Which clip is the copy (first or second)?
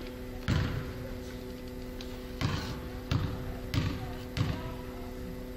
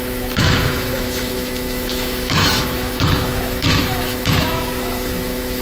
second